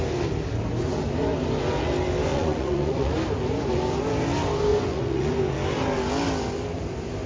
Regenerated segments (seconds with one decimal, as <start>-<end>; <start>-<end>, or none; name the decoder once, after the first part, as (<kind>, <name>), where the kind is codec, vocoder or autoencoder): 2.3-3.1 (vocoder, Vocos); 4.7-5.3